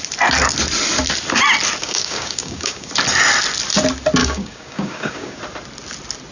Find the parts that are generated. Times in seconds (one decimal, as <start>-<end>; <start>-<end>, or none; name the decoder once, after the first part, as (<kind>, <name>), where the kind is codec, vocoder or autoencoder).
1.8-2.9 (codec, DAC); 4.2-5.4